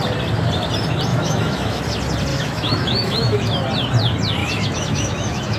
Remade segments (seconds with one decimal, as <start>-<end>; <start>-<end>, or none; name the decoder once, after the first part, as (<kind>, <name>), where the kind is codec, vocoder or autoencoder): 1.1-1.8 (autoencoder, DAC-VAE); 2.3-3.6; 4.4-5.6